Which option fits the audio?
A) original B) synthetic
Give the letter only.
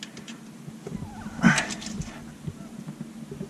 A